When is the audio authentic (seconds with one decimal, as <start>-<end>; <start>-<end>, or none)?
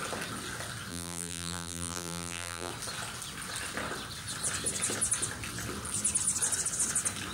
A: 0.0-0.9; 2.7-7.3